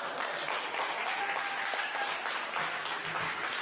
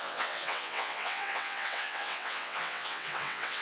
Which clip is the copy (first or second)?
second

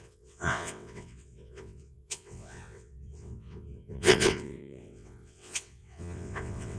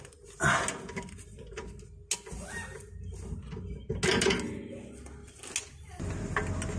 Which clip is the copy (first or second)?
first